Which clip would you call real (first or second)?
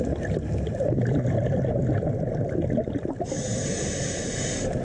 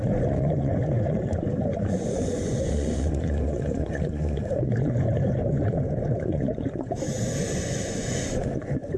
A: first